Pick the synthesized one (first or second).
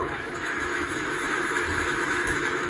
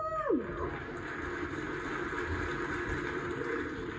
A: first